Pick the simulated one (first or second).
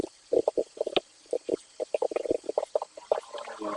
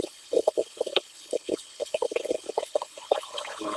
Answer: second